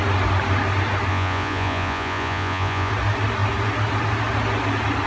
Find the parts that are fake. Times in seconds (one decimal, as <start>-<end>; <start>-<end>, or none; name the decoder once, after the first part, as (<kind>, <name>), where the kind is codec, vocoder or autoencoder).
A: 1.1-2.9 (vocoder, Vocos)